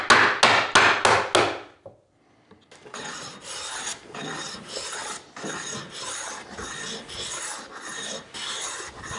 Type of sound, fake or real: real